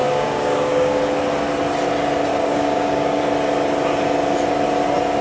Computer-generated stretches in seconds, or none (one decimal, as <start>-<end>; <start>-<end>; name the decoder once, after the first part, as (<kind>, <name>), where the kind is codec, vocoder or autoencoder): 0.0-1.0 (codec, DAC); 2.3-3.2

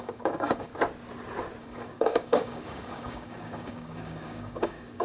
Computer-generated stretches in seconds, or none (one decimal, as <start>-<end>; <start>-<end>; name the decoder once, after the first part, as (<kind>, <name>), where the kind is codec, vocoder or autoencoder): 0.0-0.7 (codec, DAC); 1.6-5.0

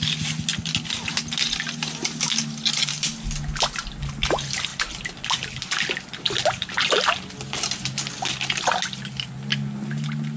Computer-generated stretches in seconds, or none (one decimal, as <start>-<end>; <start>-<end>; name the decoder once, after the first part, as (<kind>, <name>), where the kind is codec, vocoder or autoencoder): none

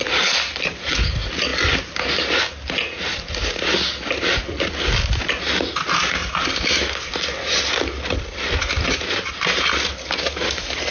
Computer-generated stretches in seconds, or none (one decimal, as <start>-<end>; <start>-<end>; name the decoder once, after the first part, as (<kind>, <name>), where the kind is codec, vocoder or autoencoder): none

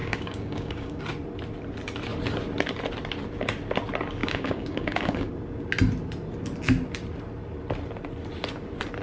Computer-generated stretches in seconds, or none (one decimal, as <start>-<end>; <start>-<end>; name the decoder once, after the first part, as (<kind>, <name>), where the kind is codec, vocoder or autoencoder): 0.0-1.0 (codec, DAC); 4.2-5.3

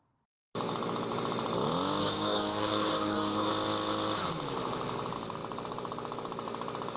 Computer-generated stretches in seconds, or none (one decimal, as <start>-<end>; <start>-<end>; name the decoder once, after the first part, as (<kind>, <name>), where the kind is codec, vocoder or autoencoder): 2.0-3.5 (codec, DAC)

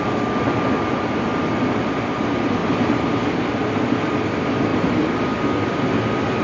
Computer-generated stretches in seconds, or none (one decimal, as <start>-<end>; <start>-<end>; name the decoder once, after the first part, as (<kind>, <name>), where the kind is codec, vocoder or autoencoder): none